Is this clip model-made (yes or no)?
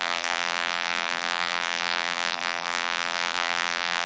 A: yes